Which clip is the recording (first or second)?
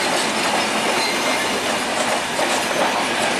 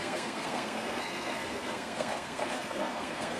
first